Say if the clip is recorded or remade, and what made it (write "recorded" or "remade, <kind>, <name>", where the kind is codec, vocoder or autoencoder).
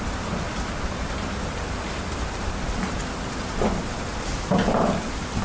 recorded